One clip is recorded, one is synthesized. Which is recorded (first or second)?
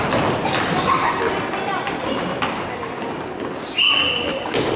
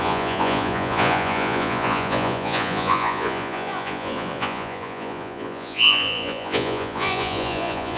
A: first